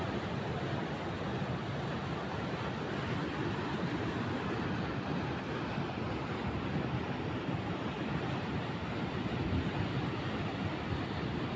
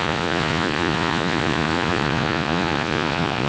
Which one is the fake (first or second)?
second